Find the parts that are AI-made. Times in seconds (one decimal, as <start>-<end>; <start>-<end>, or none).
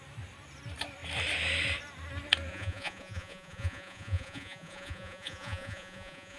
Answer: 2.5-6.4